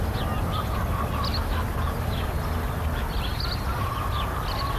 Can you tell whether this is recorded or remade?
recorded